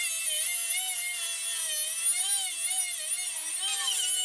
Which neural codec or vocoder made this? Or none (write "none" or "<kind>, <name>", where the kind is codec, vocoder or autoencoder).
none